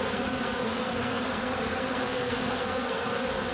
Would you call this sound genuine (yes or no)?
no